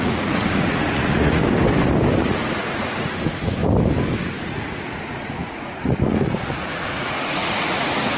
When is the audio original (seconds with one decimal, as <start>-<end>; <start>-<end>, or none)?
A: 1.4-2.2; 3.6-4.4